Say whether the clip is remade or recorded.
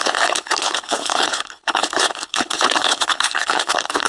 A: remade